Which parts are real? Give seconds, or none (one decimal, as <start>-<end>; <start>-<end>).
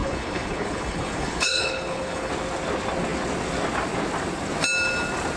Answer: 2.3-5.4